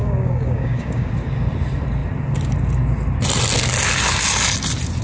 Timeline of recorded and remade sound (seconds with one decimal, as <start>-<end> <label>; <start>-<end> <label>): 0.0-1.1 remade; 1.1-5.0 recorded